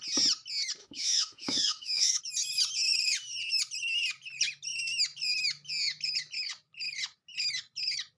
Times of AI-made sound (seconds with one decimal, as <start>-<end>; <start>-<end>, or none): 0.8-2.2